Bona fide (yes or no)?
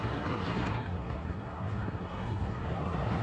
no